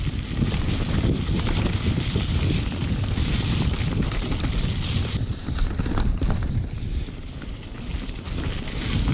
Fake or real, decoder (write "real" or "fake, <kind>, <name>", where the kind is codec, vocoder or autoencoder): real